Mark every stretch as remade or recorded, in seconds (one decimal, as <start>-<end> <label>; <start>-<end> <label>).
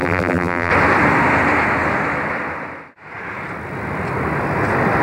0.0-0.7 remade; 0.7-5.0 recorded